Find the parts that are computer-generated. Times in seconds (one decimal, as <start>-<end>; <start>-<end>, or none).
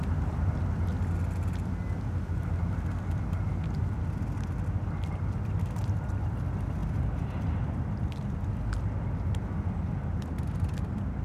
none